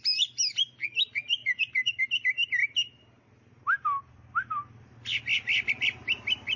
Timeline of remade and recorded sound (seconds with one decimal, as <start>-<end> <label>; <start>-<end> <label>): 0.0-1.4 recorded; 1.4-2.0 remade; 2.0-2.6 recorded; 2.6-4.1 remade; 4.1-6.6 recorded